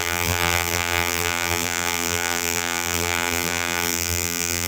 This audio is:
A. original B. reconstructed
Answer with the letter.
B